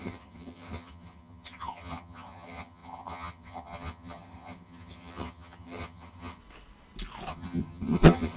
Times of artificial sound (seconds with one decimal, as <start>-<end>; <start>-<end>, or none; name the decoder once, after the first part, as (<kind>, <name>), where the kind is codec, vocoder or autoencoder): 0.0-6.4 (vocoder, HiFi-GAN); 7.3-8.4